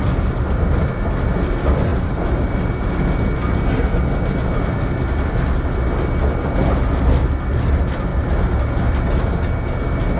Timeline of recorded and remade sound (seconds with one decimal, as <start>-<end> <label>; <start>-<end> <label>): 0.0-1.9 recorded; 1.9-3.0 remade; 3.0-10.2 recorded